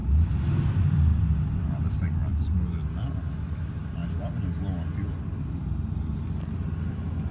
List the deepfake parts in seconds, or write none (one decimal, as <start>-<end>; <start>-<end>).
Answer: 0.7-1.1; 1.6-2.3; 3.6-4.0